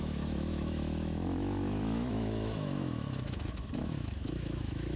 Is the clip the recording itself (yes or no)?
no